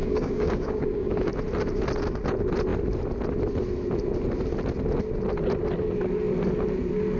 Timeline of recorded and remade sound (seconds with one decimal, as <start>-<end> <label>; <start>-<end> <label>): 0.0-1.3 remade; 1.3-7.2 recorded